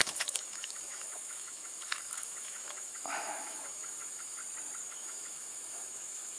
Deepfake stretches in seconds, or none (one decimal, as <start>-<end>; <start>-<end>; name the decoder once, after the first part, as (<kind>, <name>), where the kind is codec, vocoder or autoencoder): 0.0-4.4 (autoencoder, DAC-VAE); 4.9-6.4

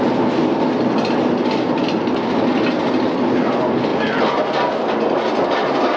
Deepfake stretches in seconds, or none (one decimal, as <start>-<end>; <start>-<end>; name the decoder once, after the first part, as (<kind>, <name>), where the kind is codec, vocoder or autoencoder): none

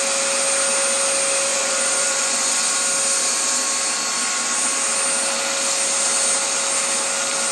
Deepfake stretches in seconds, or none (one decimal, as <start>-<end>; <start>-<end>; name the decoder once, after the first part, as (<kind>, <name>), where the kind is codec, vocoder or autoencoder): 1.5-2.7 (vocoder, Vocos)

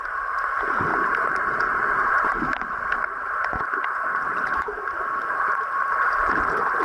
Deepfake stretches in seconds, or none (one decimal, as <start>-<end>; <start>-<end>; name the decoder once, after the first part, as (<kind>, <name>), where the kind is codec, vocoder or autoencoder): 0.9-2.9 (vocoder, BigVGAN v2); 3.7-6.8

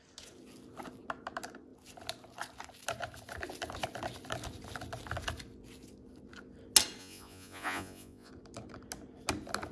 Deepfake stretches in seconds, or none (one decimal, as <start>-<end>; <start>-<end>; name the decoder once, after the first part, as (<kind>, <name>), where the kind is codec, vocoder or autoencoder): 7.0-8.3 (vocoder, Vocos)

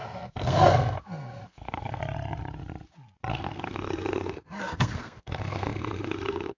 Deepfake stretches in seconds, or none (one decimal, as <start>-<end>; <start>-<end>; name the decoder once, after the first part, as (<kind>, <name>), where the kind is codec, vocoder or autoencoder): 0.0-2.0 (codec, SNAC); 3.3-6.6